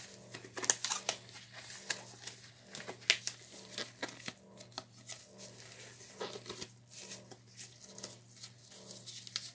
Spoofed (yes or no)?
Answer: no